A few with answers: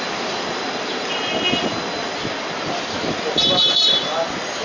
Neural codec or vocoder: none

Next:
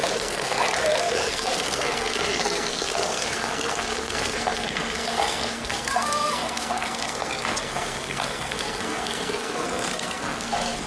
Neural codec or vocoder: codec, SNAC